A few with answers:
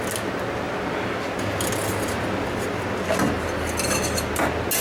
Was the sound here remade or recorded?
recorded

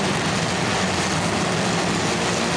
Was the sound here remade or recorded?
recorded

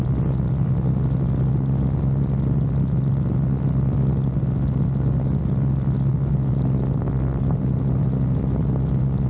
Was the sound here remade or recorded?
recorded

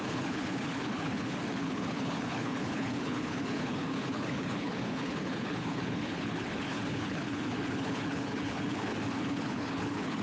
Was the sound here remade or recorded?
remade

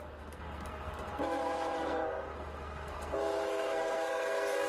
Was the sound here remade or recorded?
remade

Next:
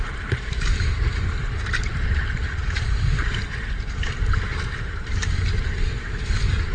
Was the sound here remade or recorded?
remade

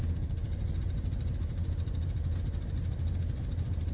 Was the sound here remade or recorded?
recorded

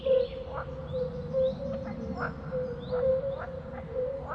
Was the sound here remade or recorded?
recorded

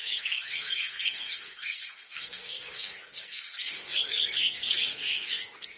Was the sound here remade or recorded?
remade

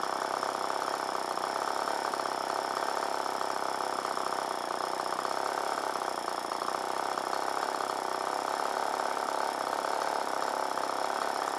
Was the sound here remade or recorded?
recorded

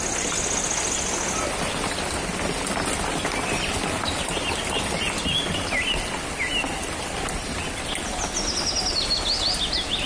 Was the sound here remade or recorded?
recorded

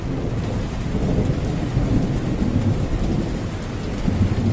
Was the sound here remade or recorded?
recorded